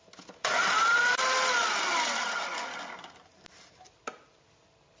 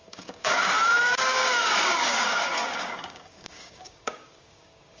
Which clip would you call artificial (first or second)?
second